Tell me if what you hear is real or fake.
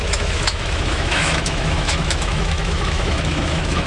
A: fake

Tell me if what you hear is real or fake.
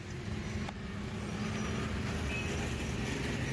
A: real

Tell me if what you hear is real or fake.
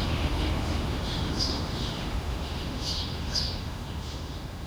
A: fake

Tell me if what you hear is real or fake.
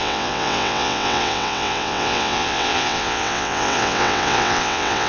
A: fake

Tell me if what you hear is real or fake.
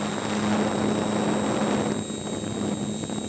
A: real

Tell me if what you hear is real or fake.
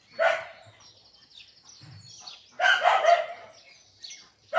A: real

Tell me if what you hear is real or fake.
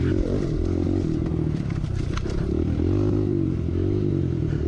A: fake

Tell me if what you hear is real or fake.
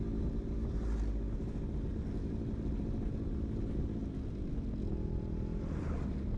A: real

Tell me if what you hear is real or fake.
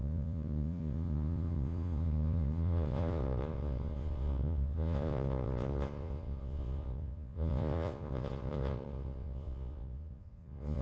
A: fake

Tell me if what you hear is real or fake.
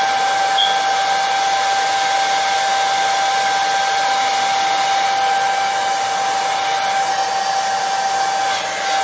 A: real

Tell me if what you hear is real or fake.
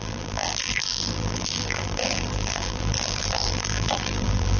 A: fake